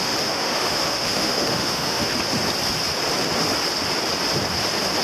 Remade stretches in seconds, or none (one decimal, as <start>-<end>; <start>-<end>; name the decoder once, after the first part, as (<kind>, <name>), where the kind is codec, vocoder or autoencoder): 0.0-2.1 (autoencoder, DAC-VAE)